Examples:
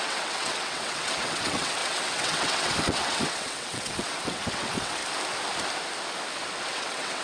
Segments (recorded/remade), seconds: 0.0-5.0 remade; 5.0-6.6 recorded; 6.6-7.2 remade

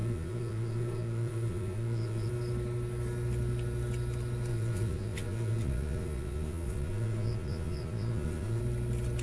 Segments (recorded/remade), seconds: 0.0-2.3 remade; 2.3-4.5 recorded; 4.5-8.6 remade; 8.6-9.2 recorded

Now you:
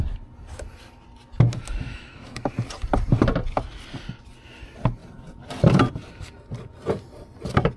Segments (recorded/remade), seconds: 0.0-1.9 recorded; 1.9-2.5 remade; 2.5-7.8 recorded